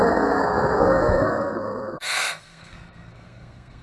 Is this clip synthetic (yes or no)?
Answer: yes